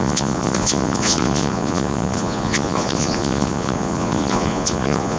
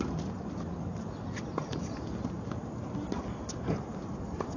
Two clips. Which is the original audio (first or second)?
second